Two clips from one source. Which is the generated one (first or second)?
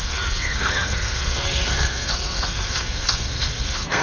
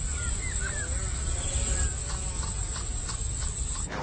first